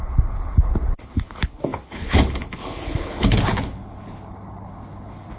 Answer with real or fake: fake